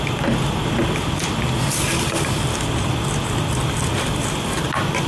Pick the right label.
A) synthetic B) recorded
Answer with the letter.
B